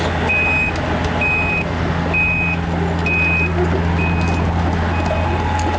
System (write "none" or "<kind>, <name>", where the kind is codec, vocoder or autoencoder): none